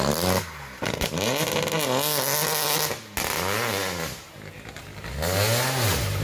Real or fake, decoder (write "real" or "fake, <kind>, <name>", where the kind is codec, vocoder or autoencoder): real